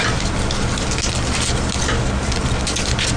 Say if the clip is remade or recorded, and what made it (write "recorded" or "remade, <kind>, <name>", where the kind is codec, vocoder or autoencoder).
recorded